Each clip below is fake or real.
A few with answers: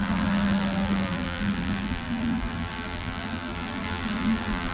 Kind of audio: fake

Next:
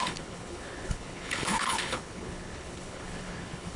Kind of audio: fake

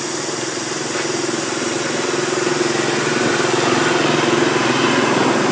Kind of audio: real